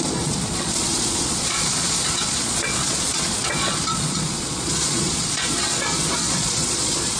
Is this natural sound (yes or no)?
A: no